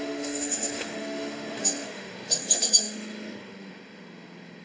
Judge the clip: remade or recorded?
remade